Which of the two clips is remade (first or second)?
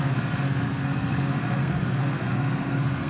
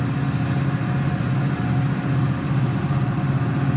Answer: first